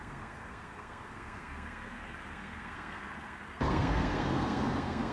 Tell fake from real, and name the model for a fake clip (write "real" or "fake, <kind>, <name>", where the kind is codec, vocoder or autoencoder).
fake, codec, SNAC